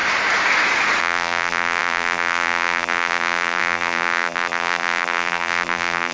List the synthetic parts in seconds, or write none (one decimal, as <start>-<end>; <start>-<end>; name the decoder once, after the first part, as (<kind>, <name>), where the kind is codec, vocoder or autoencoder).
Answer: 1.0-6.1 (vocoder, BigVGAN v2)

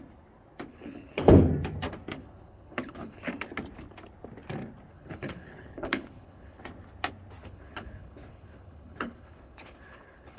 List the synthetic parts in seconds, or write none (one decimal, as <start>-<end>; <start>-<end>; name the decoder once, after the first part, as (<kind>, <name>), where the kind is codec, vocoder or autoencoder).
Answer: 0.7-1.5 (codec, HILCodec); 2.2-3.3; 4.9-6.6; 7.4-10.4

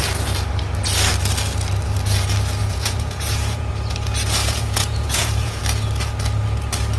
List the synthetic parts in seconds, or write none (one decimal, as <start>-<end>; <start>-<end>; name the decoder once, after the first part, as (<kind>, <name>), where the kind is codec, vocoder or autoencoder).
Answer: 2.6-3.7 (vocoder, Vocos); 4.4-5.6

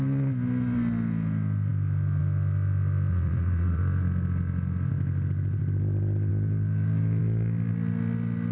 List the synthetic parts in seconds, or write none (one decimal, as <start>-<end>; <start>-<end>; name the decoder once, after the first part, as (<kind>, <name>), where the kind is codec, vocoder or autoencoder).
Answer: 3.1-3.8 (vocoder, Vocos)

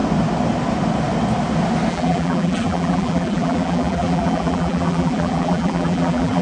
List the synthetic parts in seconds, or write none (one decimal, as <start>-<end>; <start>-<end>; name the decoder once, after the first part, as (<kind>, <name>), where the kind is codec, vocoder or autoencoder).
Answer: 1.9-6.4 (vocoder, BigVGAN v2)

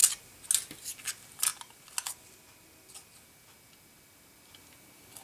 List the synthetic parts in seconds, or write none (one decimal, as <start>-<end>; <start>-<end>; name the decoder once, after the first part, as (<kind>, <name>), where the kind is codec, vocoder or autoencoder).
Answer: none